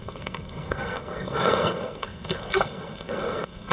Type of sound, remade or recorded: remade